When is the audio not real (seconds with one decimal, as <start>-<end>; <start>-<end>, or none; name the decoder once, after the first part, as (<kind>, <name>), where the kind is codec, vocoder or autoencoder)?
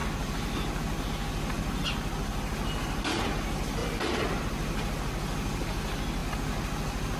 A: 3.8-4.4 (vocoder, BigVGAN v2)